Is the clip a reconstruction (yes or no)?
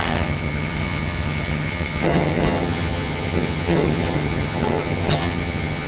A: yes